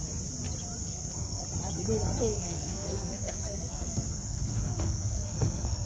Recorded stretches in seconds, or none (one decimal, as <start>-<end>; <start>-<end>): 0.0-0.8; 1.4-2.2